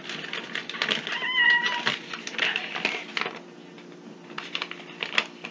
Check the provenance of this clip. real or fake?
real